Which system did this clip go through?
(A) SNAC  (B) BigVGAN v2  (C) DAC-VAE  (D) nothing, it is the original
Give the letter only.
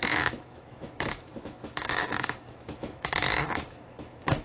C